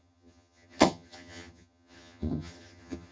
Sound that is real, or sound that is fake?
fake